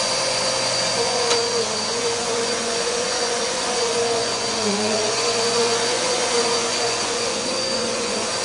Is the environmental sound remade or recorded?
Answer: remade